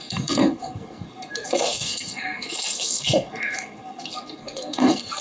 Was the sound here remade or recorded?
remade